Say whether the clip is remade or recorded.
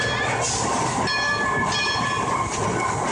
recorded